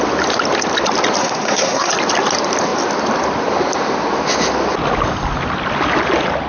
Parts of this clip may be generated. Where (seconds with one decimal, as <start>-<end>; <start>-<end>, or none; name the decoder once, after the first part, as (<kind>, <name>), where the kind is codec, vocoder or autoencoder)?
1.2-1.9 (codec, SNAC)